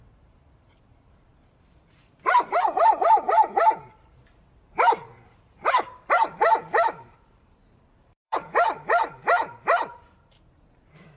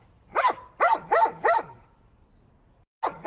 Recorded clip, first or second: second